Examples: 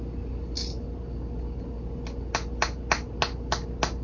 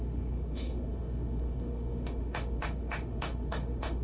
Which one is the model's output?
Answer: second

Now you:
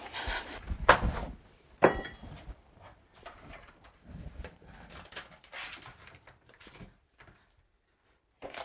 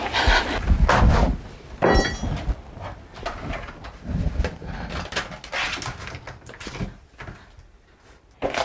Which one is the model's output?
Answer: first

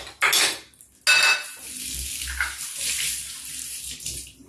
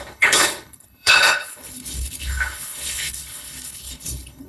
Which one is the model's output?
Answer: second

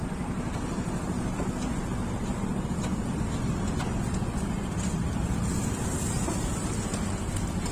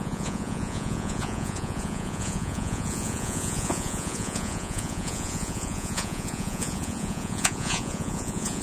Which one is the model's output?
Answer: second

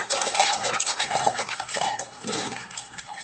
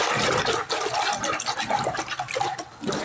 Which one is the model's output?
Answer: first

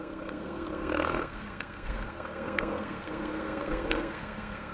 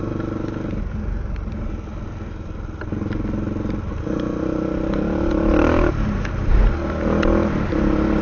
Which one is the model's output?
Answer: first